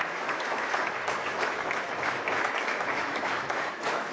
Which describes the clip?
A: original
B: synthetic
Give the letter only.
B